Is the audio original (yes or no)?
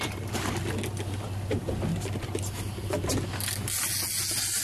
yes